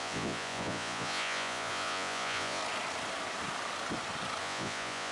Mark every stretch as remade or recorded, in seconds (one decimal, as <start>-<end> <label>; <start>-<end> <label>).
0.0-2.6 remade; 2.6-4.4 recorded; 4.4-5.1 remade